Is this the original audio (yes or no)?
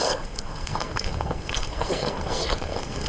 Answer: no